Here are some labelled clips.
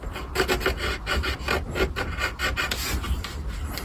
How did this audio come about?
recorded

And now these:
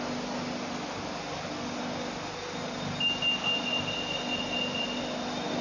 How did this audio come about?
recorded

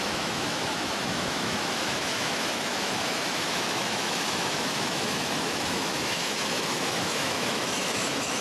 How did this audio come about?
remade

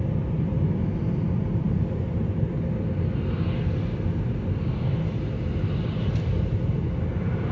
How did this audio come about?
recorded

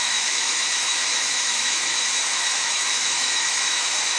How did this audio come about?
remade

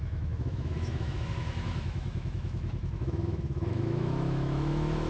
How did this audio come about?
remade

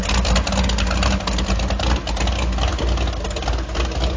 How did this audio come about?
recorded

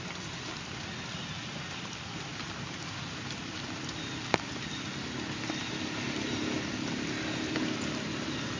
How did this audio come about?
recorded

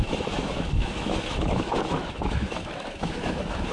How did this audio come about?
remade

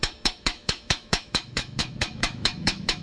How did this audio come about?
remade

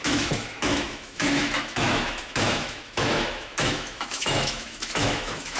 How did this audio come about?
remade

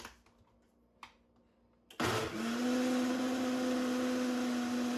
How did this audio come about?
recorded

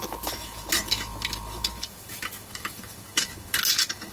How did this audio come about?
remade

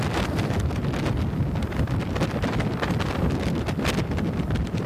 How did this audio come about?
recorded